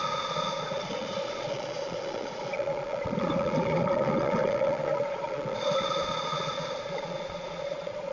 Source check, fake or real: fake